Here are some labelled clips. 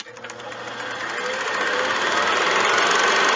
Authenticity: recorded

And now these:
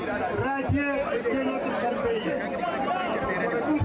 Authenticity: recorded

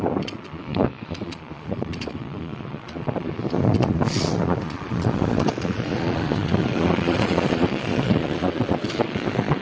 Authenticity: remade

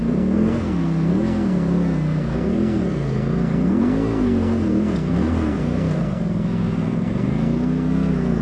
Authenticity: remade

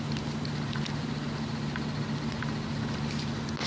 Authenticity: recorded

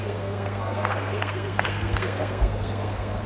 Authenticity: remade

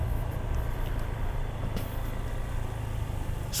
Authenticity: recorded